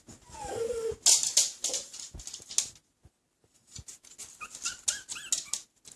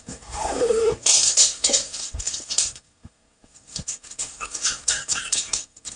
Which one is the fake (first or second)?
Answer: second